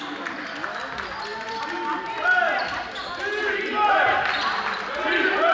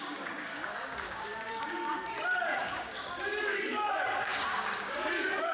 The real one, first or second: first